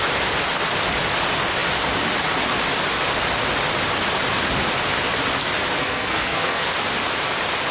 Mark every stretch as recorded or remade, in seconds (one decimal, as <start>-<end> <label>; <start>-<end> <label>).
0.0-5.8 recorded; 5.8-6.7 remade; 6.7-7.7 recorded